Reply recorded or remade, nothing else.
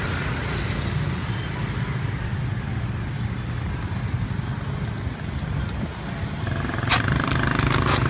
recorded